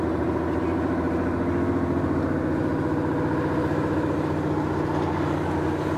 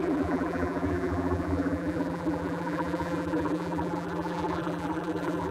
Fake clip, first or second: second